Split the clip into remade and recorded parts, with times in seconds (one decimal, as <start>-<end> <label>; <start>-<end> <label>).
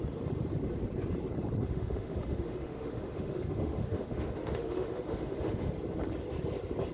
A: 0.0-1.6 recorded; 1.6-5.7 remade; 5.7-6.9 recorded